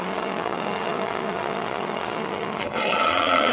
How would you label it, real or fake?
fake